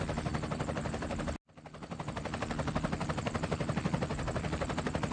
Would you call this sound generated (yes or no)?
no